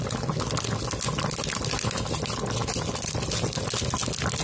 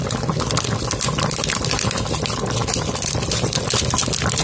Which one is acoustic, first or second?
first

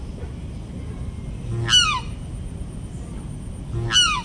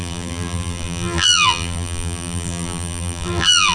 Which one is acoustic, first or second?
first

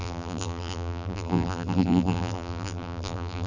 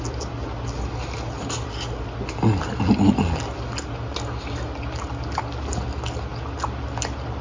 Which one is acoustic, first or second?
second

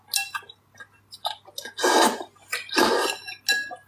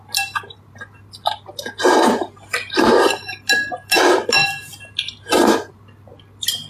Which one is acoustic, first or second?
first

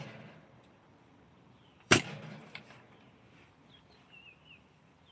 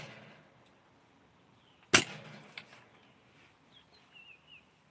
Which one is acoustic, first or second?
second